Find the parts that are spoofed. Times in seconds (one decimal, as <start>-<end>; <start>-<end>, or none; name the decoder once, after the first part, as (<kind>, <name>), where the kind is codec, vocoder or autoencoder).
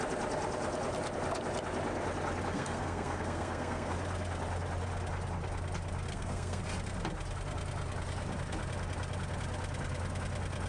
2.5-3.9 (codec, SNAC); 6.1-6.6